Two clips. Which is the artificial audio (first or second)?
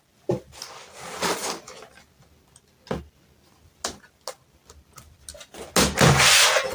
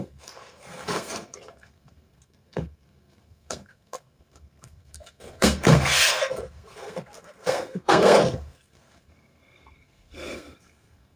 second